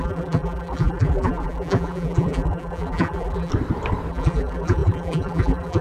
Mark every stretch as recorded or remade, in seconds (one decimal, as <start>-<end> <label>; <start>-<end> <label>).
0.0-3.5 remade; 3.5-4.1 recorded; 4.1-5.8 remade